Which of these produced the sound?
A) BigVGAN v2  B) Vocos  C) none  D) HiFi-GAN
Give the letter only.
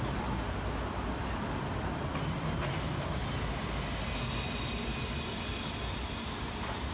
C